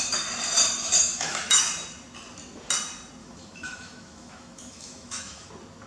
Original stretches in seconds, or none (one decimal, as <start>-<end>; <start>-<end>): 0.0-1.0; 1.7-3.2; 5.5-5.9